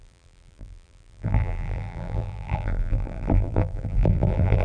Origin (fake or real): fake